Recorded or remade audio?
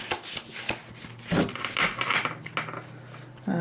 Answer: recorded